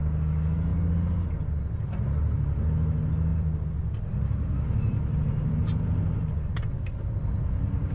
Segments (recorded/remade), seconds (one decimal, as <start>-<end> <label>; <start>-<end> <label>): 0.0-3.3 recorded; 3.3-6.5 remade; 6.5-7.9 recorded